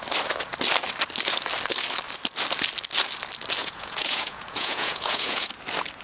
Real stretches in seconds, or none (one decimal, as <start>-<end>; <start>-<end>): 0.0-3.6; 5.5-6.0